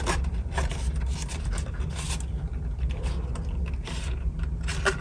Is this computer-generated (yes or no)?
no